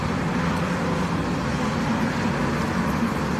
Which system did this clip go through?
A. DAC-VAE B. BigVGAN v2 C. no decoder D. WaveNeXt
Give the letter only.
C